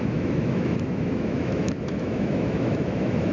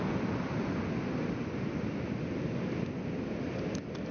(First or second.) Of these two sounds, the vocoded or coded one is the first